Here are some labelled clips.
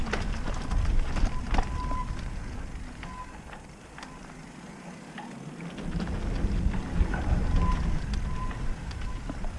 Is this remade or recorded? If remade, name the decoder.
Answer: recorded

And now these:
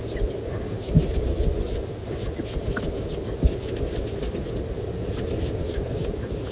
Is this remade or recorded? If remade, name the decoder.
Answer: recorded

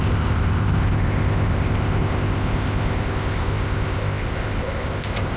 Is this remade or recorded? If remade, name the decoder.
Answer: remade, codec, ZipCodec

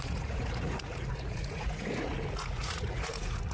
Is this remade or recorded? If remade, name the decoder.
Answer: remade, vocoder, Vocos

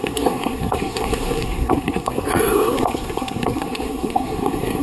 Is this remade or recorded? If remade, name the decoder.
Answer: remade, codec, SNAC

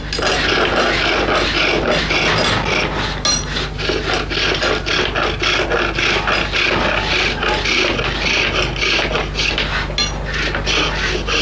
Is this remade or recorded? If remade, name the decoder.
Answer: recorded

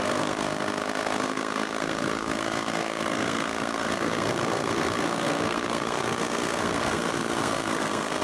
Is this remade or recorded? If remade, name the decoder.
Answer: remade, codec, SNAC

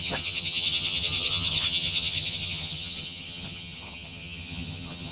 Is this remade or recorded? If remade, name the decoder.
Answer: remade, vocoder, HiFi-GAN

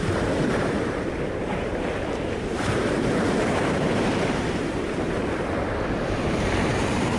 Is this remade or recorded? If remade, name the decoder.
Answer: remade, vocoder, BigVGAN v2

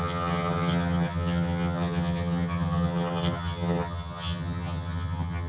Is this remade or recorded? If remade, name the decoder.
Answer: remade, vocoder, HiFi-GAN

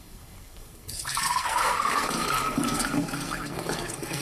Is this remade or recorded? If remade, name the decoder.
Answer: remade, codec, SNAC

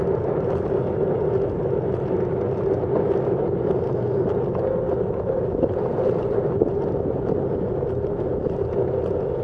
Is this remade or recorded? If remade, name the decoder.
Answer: recorded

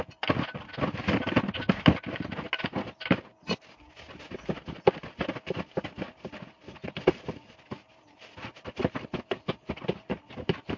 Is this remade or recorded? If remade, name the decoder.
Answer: recorded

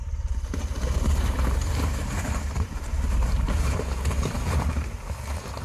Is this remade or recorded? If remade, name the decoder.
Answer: remade, vocoder, BigVGAN v2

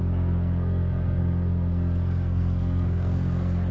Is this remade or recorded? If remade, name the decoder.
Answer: remade, codec, SNAC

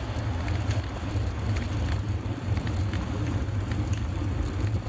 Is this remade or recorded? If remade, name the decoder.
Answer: recorded